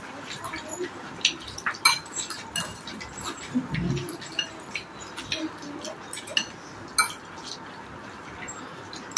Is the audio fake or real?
real